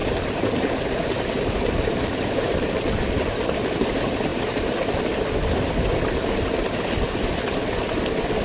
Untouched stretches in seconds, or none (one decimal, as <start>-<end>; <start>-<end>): 3.7-8.4